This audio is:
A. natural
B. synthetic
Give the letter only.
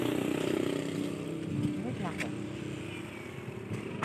A